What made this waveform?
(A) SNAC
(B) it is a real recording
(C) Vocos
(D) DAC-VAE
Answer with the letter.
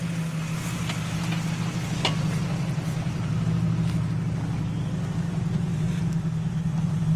B